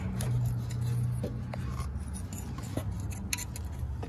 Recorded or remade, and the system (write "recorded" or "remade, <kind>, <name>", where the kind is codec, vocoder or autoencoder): recorded